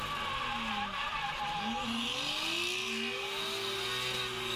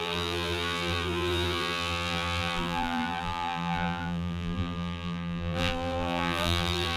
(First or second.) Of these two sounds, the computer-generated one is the second